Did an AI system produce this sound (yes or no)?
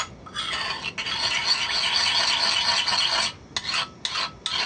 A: no